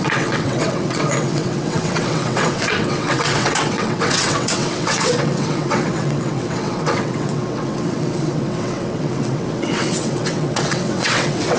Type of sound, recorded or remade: remade